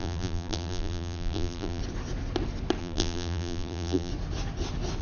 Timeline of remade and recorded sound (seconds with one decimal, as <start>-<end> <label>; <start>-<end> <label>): 0.0-1.8 remade; 1.8-2.8 recorded; 2.8-4.1 remade; 4.1-5.0 recorded